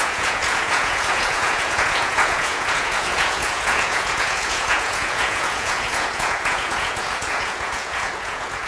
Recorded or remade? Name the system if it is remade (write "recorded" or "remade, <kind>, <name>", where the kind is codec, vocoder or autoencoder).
remade, vocoder, Vocos